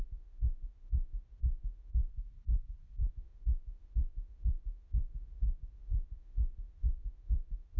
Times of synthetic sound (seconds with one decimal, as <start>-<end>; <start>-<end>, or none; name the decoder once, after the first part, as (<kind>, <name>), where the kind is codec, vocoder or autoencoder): 0.0-2.1 (autoencoder, DAC-VAE); 3.1-7.8